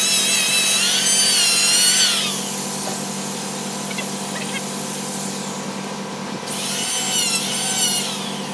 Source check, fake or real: real